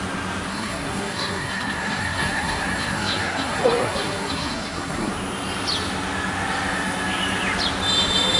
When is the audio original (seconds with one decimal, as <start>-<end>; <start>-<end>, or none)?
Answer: 0.0-0.5; 5.1-8.4